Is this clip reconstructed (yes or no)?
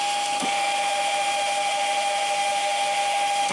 yes